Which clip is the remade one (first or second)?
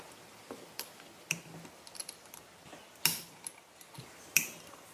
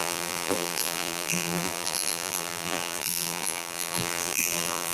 second